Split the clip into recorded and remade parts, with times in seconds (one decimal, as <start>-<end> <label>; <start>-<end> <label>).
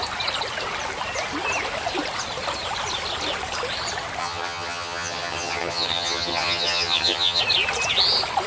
0.0-4.2 recorded; 4.2-7.4 remade; 7.4-8.5 recorded